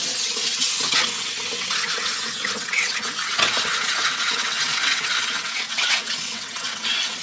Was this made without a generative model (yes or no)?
no